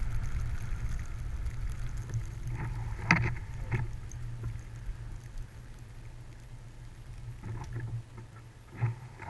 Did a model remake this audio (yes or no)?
no